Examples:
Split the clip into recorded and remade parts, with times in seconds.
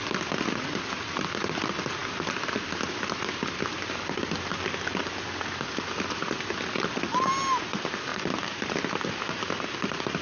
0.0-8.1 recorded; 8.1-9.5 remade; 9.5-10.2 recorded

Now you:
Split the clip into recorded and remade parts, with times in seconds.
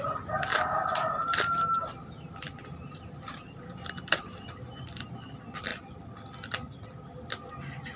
0.0-0.5 recorded; 0.5-4.8 remade; 4.8-8.0 recorded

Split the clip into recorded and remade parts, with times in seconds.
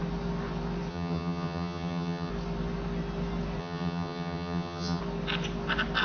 0.0-0.9 recorded; 0.9-2.3 remade; 2.3-3.6 recorded; 3.6-5.0 remade; 5.0-6.0 recorded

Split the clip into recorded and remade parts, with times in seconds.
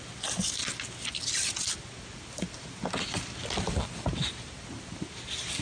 0.0-5.6 recorded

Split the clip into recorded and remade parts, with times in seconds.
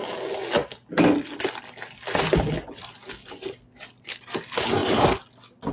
0.0-3.2 recorded; 3.2-4.2 remade; 4.2-5.7 recorded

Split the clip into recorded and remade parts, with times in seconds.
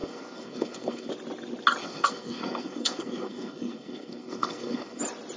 0.0-1.1 remade; 1.1-1.8 recorded; 1.8-5.0 remade; 5.0-5.4 recorded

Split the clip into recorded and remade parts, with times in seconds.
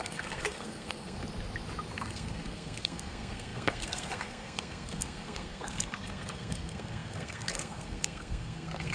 0.0-1.2 remade; 1.2-1.9 recorded; 1.9-8.9 remade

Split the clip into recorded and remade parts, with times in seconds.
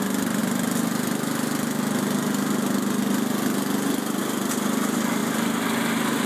0.0-5.2 recorded; 5.2-6.3 remade